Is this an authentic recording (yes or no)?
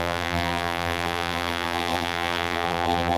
no